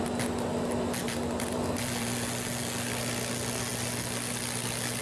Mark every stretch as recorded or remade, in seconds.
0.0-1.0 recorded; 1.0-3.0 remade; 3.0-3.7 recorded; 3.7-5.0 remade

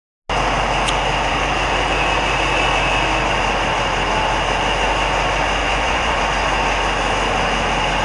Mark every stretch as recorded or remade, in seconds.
0.0-5.6 recorded; 5.6-6.2 remade; 6.2-8.0 recorded